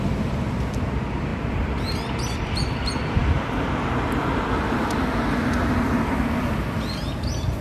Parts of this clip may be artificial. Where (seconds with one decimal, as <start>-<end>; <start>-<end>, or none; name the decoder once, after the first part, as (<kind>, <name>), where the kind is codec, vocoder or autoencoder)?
none